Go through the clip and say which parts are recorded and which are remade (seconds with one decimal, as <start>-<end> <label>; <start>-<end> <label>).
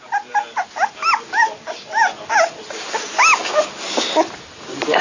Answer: 0.0-5.0 recorded